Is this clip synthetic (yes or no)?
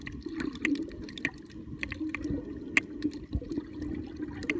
no